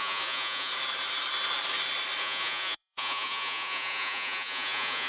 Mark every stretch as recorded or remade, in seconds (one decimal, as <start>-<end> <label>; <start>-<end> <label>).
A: 0.0-0.7 remade; 0.7-2.2 recorded; 2.2-5.1 remade